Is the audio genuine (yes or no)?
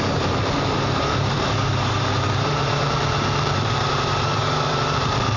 no